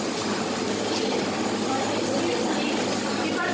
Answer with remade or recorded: recorded